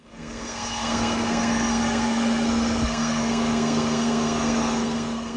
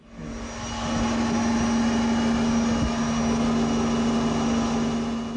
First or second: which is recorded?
second